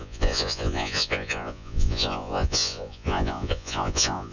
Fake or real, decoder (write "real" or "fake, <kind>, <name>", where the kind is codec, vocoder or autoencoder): fake, vocoder, Vocos